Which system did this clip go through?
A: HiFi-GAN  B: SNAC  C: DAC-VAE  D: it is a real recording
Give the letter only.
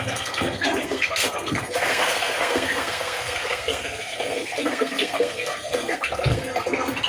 B